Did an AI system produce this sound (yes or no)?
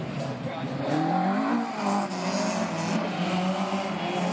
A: no